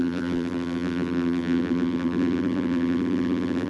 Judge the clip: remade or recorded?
remade